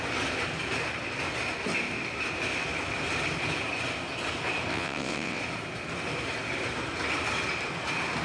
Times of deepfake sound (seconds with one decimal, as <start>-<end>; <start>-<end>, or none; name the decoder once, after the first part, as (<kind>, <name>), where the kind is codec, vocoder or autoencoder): 4.7-5.4 (vocoder, WaveNeXt)

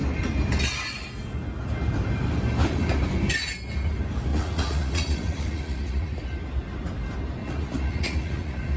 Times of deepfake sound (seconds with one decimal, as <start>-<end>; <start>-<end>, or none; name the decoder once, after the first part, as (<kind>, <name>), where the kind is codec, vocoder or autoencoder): 4.3-6.2 (vocoder, Vocos); 7.4-8.8

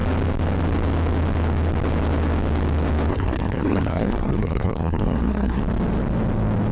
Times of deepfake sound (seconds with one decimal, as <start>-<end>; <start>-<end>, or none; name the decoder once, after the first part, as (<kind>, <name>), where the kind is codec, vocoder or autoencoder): 3.1-5.6 (codec, SNAC)

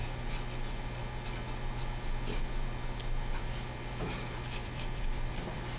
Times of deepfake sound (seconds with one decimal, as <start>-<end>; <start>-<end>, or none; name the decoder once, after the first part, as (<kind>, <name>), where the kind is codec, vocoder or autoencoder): 4.6-5.8 (vocoder, BigVGAN v2)

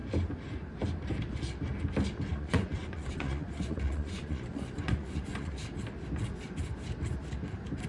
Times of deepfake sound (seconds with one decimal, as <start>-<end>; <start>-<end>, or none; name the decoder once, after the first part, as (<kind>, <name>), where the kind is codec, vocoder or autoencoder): 2.3-5.5 (vocoder, Vocos)

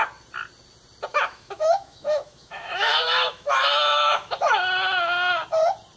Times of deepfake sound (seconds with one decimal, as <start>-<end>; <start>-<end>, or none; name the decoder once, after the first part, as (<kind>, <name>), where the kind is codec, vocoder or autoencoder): 1.1-4.6 (autoencoder, DAC-VAE)

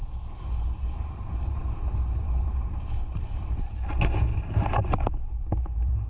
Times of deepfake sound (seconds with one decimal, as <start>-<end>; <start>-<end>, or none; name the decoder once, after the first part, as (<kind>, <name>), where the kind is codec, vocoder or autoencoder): 0.0-0.8 (vocoder, BigVGAN v2); 1.6-3.8; 4.3-6.1